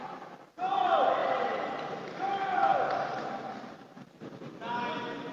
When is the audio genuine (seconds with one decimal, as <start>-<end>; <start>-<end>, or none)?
0.0-1.2; 2.3-2.7; 3.3-5.3

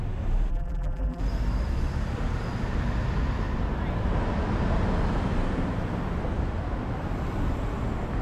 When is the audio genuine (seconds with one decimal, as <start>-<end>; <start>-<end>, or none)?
0.0-0.5; 1.2-8.2

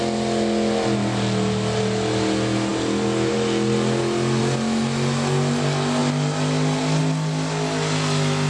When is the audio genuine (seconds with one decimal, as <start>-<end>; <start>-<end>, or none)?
0.0-8.5

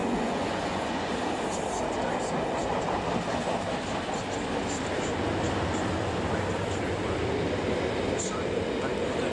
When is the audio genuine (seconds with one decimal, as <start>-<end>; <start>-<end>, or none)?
1.1-9.3

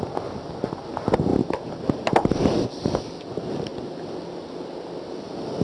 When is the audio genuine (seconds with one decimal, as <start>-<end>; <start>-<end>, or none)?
0.0-5.6

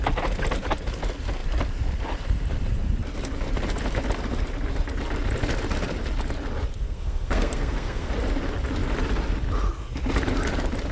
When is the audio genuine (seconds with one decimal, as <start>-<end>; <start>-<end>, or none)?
0.0-6.8; 8.1-10.9